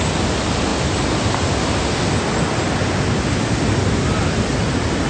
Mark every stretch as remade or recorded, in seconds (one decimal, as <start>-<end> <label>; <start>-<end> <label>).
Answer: 0.0-5.1 recorded